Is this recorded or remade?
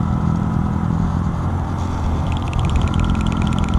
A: remade